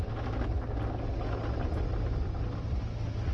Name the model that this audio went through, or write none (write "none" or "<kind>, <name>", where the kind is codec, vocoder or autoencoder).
none